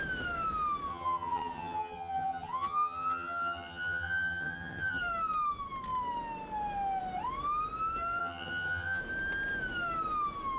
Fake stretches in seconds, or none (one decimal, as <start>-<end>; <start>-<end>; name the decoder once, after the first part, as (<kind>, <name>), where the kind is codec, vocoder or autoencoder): 0.9-5.0 (vocoder, HiFi-GAN); 8.2-9.0